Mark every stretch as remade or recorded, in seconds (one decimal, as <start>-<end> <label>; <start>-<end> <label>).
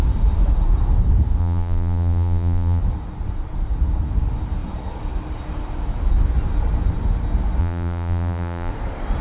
0.0-1.4 recorded; 1.4-2.8 remade; 2.8-7.6 recorded; 7.6-8.7 remade; 8.7-9.2 recorded